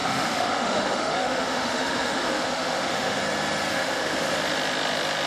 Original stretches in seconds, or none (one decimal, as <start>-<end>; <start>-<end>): 3.2-3.7; 4.3-5.3